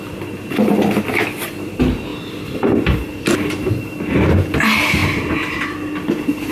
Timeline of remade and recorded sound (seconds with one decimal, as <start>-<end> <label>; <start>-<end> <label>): 0.0-6.5 recorded